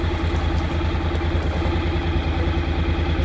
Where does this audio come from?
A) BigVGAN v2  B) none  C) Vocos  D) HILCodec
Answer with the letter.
B